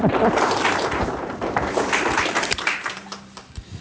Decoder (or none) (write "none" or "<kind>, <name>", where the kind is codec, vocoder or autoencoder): vocoder, BigVGAN v2